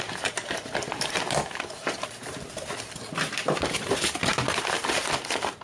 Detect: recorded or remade recorded